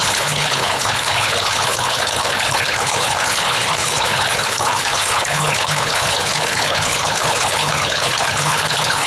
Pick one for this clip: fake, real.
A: fake